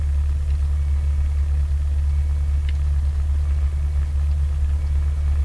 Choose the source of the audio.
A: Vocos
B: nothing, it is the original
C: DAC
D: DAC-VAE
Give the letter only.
B